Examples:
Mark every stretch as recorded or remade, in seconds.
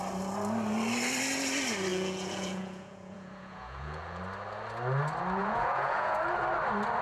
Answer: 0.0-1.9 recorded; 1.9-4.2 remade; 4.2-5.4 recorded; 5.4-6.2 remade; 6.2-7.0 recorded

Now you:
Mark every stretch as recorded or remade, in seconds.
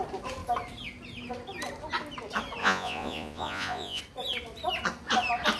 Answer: 0.0-2.6 recorded; 2.6-4.0 remade; 4.0-5.6 recorded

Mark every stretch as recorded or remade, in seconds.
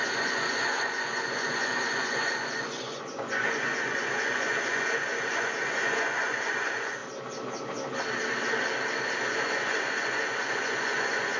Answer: 0.0-7.0 remade; 7.0-9.3 recorded; 9.3-11.4 remade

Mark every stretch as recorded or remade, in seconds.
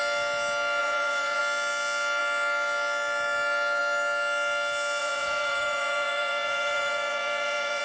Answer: 0.0-0.8 recorded; 0.8-1.4 remade; 1.4-5.0 recorded; 5.0-7.8 remade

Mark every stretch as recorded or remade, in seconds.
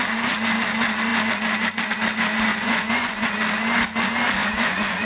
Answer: 0.0-2.5 recorded; 2.5-3.3 remade; 3.3-4.4 recorded; 4.4-5.1 remade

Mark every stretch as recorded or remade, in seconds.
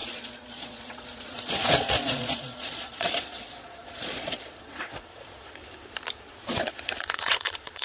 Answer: 0.0-5.6 remade; 5.6-6.5 recorded; 6.5-7.8 remade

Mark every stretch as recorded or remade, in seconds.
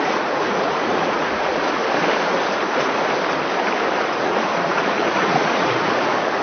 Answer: 0.0-1.8 remade; 1.8-4.0 recorded; 4.0-6.4 remade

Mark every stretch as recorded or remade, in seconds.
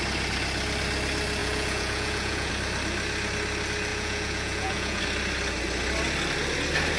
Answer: 0.0-1.4 recorded; 1.4-2.5 remade; 2.5-3.9 recorded; 3.9-5.0 remade; 5.0-7.0 recorded